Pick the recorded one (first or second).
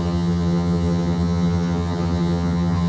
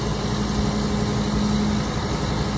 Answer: second